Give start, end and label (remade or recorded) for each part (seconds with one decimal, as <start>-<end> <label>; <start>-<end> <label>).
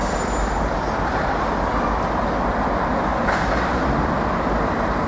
0.0-5.1 recorded